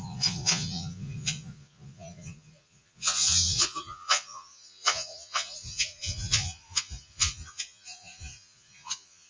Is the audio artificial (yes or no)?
yes